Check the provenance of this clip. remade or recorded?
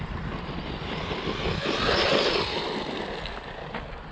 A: recorded